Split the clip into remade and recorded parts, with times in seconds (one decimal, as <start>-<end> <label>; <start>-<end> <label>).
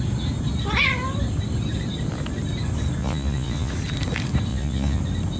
0.0-3.0 recorded; 3.0-3.7 remade; 3.7-4.5 recorded; 4.5-5.0 remade; 5.0-5.4 recorded